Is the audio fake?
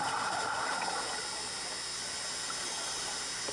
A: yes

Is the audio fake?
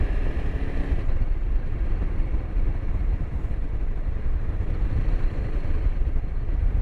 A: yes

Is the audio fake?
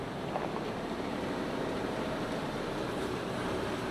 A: yes